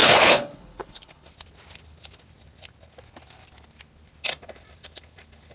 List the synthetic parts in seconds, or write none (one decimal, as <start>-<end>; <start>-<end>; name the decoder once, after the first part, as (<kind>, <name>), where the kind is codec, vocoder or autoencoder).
0.0-1.3 (codec, HILCodec)